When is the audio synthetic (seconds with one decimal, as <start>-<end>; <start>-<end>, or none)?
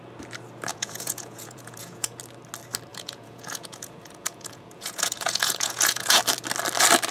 0.7-2.2; 2.9-6.2